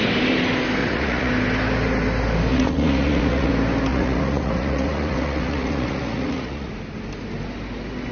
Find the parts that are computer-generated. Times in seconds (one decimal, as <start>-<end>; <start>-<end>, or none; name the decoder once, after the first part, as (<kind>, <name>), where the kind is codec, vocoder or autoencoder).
0.8-1.3 (vocoder, Vocos); 2.5-3.5; 3.9-6.7